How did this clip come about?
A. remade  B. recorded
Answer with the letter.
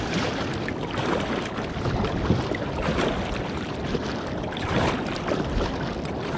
B